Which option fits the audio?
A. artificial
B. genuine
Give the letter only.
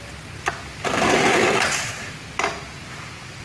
B